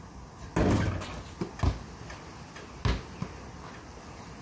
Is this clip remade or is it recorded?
recorded